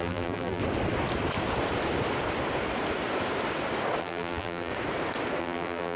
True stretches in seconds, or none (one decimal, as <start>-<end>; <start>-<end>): 0.6-4.0; 4.7-5.4